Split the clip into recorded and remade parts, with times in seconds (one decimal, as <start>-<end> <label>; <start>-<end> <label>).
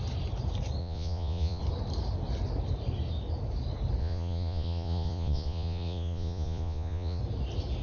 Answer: 0.0-0.8 recorded; 0.8-1.6 remade; 1.6-4.0 recorded; 4.0-7.2 remade; 7.2-7.8 recorded